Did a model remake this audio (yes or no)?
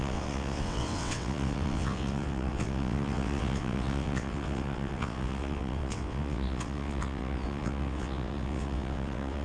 yes